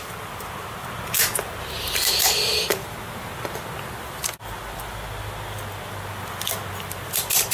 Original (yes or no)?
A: yes